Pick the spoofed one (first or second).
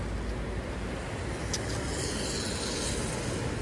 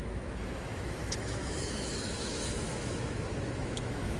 second